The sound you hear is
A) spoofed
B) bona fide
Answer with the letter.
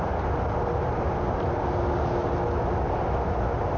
B